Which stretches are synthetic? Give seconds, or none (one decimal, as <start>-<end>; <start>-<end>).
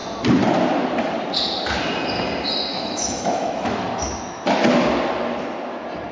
2.7-4.4